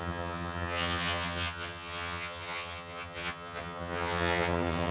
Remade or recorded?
remade